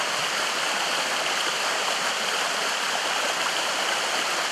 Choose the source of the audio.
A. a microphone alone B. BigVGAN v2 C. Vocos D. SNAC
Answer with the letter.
A